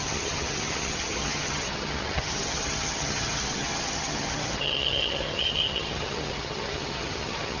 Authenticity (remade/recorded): remade